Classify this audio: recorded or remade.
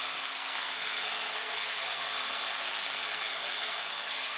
remade